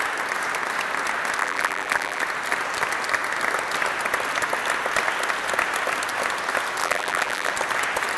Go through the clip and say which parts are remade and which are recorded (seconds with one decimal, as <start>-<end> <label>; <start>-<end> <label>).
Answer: 0.0-1.4 recorded; 1.4-2.2 remade; 2.2-6.8 recorded; 6.8-7.5 remade; 7.5-8.2 recorded